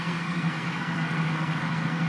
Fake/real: fake